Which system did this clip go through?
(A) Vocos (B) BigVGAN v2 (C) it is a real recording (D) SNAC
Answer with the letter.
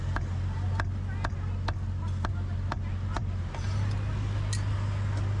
C